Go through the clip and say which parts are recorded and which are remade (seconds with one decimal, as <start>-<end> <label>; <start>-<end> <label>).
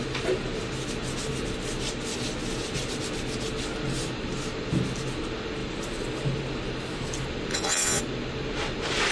0.0-7.5 recorded; 7.5-8.0 remade; 8.0-9.1 recorded